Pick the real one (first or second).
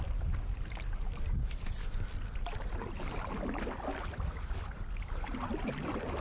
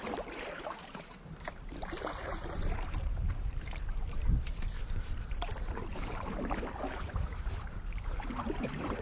first